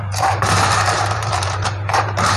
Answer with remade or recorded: remade